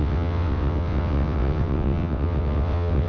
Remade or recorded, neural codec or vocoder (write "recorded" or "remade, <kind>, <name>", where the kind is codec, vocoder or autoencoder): remade, vocoder, WaveNeXt